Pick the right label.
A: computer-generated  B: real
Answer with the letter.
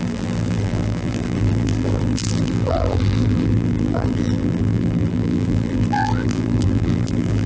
A